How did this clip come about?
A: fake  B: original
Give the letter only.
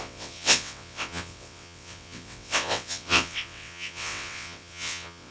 A